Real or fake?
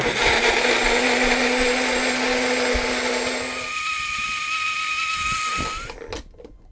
real